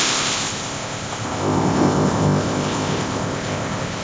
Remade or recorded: remade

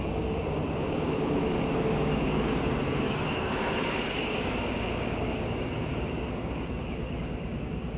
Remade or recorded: remade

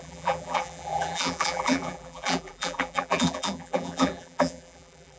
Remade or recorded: remade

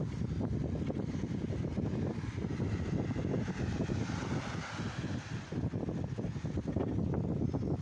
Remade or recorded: recorded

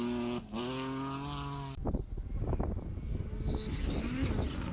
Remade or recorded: recorded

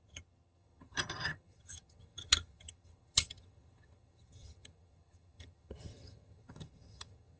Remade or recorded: remade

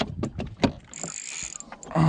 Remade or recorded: recorded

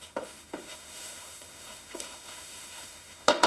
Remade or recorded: remade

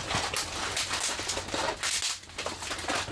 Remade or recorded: recorded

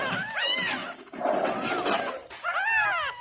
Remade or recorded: recorded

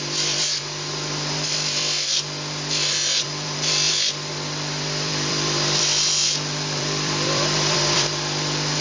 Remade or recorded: remade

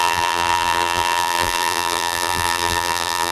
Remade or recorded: remade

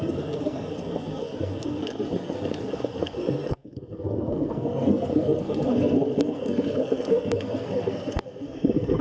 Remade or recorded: remade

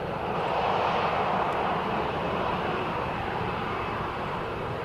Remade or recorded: recorded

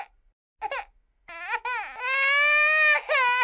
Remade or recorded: recorded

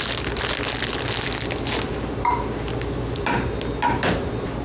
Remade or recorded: recorded